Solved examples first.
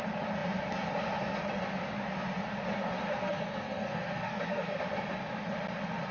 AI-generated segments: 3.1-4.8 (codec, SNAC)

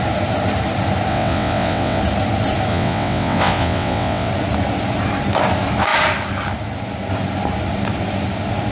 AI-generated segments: 1.1-2.0 (vocoder, WaveNeXt); 2.7-4.3

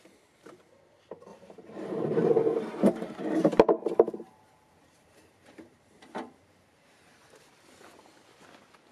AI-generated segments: 1.3-2.3 (vocoder, BigVGAN v2); 3.4-7.5

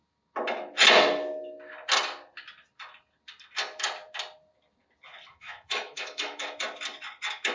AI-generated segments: 5.3-6.4 (autoencoder, DAC-VAE)

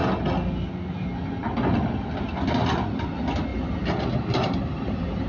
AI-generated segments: 1.9-3.5 (vocoder, BigVGAN v2); 4.0-5.3

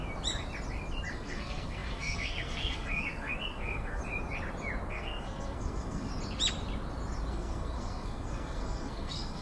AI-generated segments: 1.1-4.0 (codec, SNAC); 4.9-6.1; 7.3-9.4